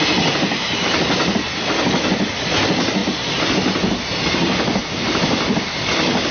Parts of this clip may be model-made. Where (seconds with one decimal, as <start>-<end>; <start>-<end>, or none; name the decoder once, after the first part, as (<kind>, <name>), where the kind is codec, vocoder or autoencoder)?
none